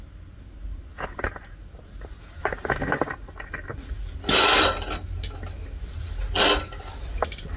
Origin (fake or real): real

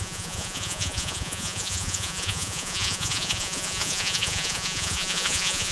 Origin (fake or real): fake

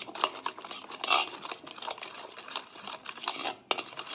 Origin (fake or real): real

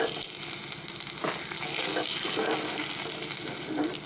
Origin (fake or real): real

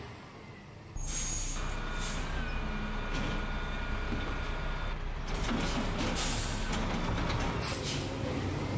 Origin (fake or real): real